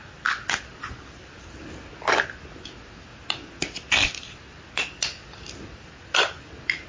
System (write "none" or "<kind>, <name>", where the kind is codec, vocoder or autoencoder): none